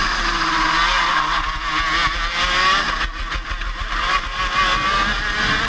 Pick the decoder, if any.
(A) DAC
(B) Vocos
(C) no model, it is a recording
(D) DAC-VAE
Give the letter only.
C